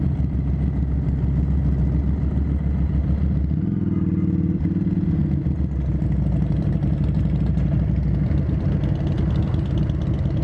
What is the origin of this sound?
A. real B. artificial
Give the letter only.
A